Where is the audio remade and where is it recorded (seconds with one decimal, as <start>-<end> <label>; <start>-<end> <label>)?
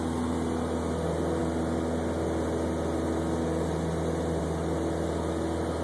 0.0-5.8 recorded